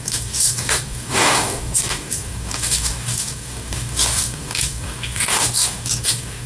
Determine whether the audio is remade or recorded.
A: remade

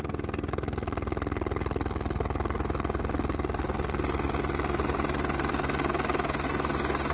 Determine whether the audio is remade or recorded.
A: recorded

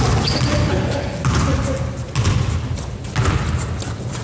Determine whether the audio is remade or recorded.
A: recorded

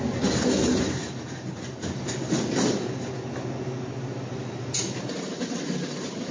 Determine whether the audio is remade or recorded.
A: recorded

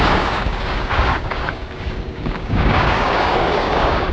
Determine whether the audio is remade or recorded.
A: remade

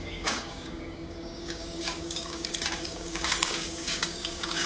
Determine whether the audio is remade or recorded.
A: remade